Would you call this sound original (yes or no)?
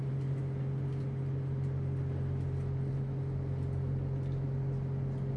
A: yes